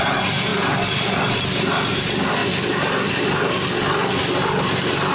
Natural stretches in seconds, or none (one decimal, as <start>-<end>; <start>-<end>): 0.0-2.4; 3.1-5.1